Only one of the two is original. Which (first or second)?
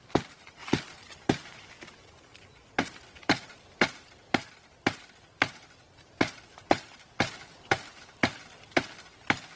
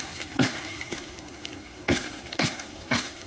first